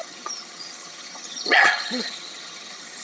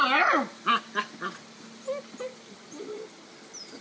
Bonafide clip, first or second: second